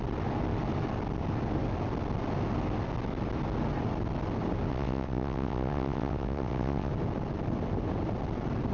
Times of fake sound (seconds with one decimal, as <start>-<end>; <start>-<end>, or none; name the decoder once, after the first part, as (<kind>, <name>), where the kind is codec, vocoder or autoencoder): 4.7-6.9 (vocoder, WaveNeXt)